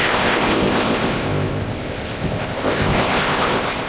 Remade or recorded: remade